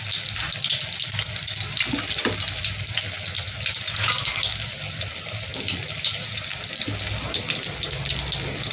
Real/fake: real